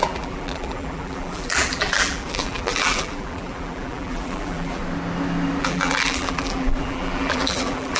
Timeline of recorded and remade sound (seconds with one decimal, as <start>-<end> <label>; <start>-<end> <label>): 0.0-4.8 remade; 4.8-5.6 recorded; 5.6-8.0 remade

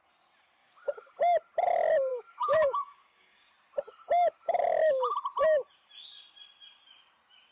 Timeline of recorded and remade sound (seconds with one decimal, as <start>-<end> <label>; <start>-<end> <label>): 0.0-0.6 recorded; 0.6-1.1 remade; 1.1-2.1 recorded; 2.1-3.5 remade; 3.5-7.5 recorded

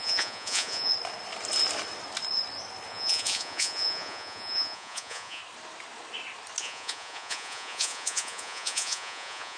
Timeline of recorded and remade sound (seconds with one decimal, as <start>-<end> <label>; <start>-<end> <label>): 0.0-0.9 remade; 0.9-2.9 recorded; 2.9-5.4 remade; 5.4-6.6 recorded; 6.6-9.6 remade